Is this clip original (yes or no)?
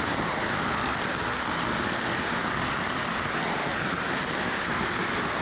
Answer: yes